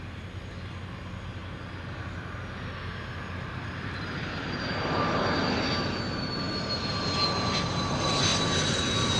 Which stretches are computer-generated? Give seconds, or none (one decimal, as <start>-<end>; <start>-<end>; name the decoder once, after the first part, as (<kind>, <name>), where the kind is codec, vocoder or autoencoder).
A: none